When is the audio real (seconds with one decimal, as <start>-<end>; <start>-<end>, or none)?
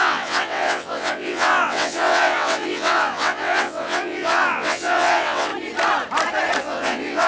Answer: 5.5-6.6